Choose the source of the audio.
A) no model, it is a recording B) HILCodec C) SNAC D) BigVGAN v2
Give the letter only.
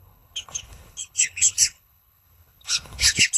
B